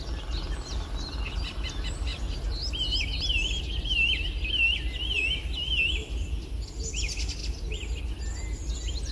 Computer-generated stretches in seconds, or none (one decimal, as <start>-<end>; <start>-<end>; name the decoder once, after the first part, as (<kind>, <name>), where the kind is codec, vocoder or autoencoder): none